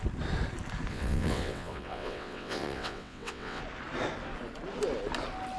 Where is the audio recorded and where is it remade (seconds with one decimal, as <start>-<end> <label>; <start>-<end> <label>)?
0.0-0.9 recorded; 0.9-3.6 remade; 3.6-5.6 recorded